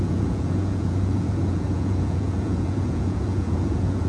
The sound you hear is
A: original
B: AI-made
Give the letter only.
B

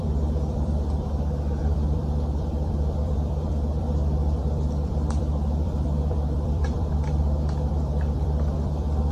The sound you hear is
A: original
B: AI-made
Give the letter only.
B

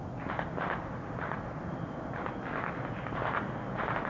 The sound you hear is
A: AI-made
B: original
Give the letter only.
B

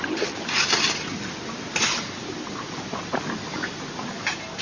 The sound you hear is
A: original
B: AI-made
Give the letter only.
A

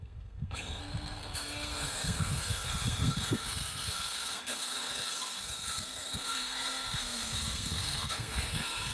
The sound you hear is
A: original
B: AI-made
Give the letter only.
B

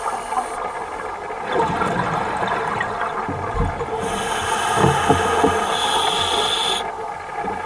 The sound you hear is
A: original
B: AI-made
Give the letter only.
A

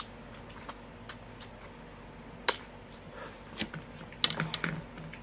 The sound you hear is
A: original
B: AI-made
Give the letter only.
A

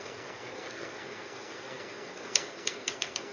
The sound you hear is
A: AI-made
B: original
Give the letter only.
A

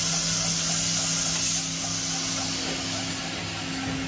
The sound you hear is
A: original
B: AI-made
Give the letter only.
A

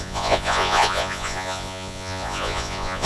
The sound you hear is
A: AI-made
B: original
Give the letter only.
A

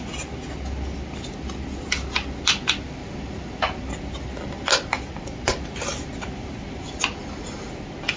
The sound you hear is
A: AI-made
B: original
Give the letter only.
B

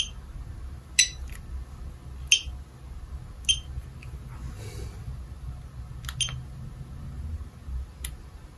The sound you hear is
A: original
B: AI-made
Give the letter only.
A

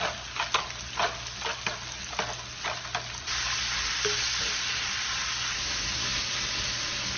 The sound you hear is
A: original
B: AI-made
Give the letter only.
A